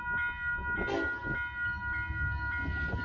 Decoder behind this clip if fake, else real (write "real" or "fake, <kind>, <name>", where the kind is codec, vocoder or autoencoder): real